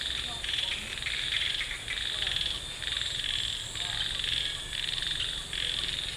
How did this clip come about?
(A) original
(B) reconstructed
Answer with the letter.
A